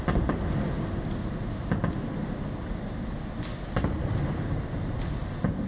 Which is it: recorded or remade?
recorded